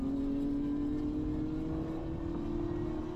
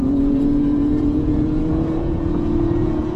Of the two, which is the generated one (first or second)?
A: second